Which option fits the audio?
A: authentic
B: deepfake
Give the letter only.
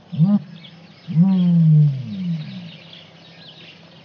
A